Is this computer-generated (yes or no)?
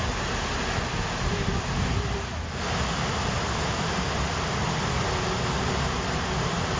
no